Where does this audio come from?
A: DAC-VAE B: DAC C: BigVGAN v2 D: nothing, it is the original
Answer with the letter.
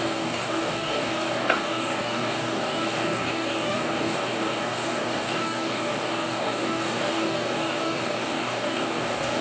B